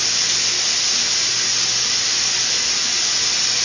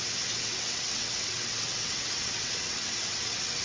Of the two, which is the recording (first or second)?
first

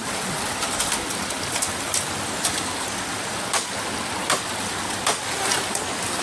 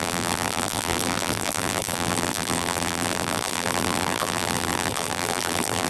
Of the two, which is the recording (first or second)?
first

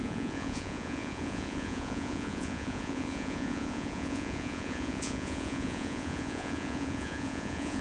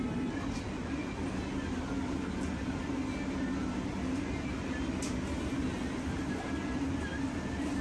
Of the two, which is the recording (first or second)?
second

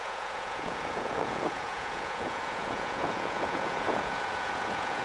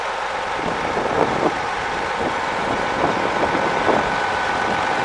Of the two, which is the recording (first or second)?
second